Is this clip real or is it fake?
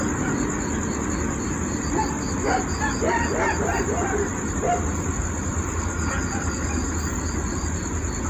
real